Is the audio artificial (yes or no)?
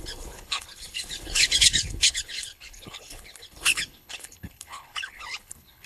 yes